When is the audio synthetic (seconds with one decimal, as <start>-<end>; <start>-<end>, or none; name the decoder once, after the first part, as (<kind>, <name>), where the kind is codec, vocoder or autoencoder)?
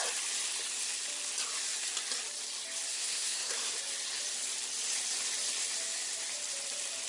2.9-3.7 (codec, SNAC)